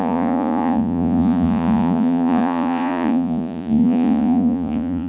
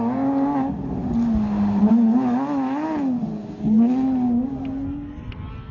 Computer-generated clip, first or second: first